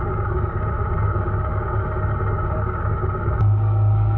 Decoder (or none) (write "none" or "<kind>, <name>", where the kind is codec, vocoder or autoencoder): codec, DAC